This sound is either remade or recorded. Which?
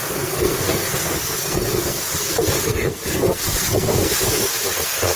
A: remade